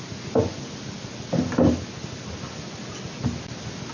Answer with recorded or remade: recorded